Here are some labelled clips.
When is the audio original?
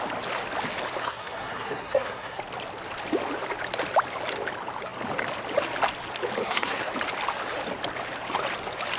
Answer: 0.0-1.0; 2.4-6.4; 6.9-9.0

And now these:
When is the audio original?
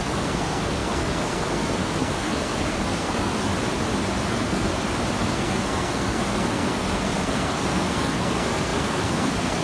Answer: 3.5-4.3; 4.7-5.2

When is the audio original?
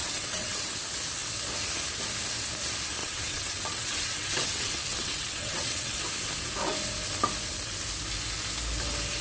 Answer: 0.7-3.0; 6.0-9.2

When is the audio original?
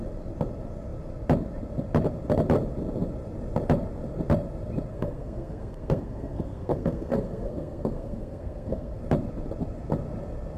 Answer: 0.0-4.9; 9.0-10.6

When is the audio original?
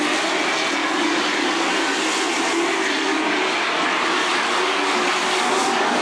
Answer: 0.0-0.8; 1.7-4.2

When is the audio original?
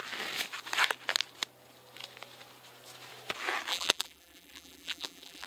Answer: 0.0-3.7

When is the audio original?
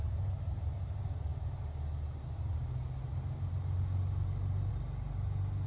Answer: 0.0-5.7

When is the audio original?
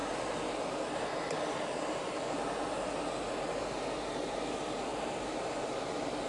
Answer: 0.0-6.3